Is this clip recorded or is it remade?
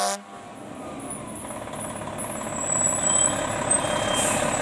recorded